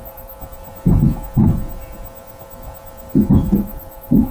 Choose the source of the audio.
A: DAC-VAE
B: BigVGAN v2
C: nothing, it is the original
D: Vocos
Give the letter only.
D